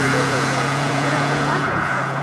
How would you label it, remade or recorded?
remade